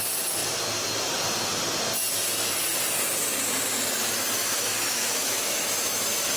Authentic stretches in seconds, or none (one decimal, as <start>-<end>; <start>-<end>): 0.0-4.4; 6.0-6.4